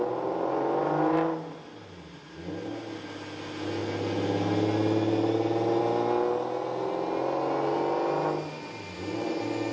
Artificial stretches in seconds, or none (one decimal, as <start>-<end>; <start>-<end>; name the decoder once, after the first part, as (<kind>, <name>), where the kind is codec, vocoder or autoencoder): none